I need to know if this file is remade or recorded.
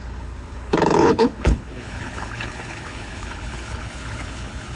remade